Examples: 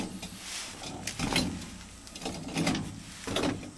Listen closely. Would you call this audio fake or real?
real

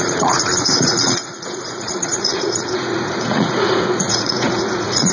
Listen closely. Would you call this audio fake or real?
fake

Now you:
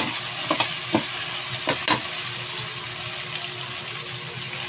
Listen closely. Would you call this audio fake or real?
real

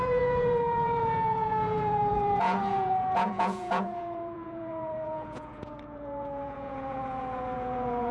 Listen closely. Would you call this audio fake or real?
fake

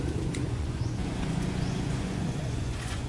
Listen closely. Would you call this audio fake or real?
fake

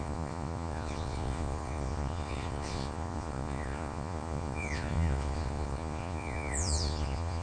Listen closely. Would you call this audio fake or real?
fake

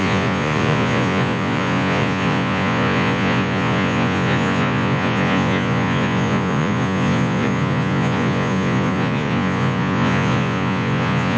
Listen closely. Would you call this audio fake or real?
fake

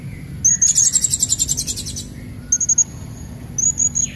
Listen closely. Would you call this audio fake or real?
real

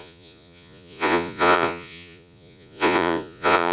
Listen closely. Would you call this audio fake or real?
fake